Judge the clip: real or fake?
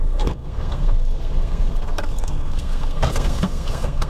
fake